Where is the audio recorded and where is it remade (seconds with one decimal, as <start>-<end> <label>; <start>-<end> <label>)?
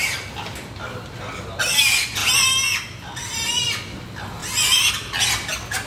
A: 0.0-4.4 recorded; 4.4-4.9 remade; 4.9-5.9 recorded